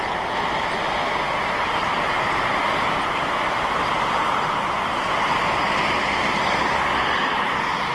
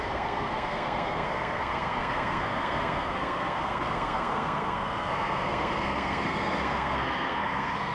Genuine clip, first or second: first